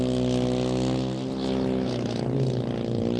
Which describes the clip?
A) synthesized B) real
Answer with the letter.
B